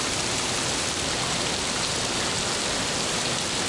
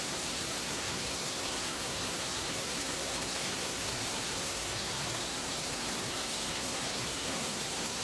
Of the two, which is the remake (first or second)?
second